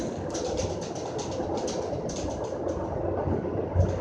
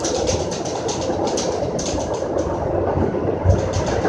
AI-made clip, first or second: second